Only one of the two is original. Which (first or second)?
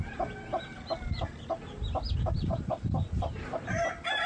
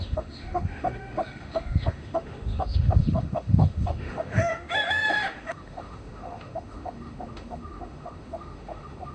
first